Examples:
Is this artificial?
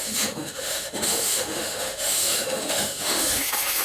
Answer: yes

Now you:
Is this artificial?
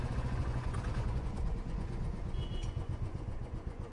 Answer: yes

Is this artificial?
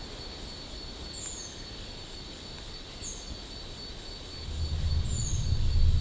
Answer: no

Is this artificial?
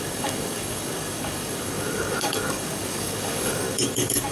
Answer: yes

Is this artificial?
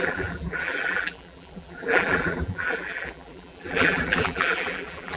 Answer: yes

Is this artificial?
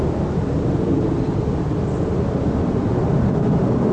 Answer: yes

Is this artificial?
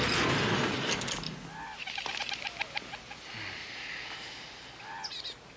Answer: no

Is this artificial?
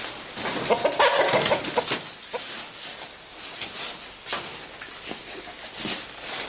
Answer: no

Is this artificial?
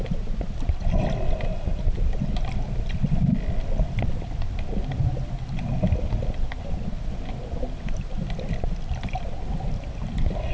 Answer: no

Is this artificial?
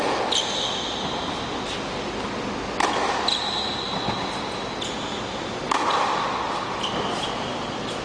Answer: no